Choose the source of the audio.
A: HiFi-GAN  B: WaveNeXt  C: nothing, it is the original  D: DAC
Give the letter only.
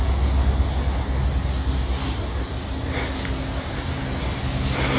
C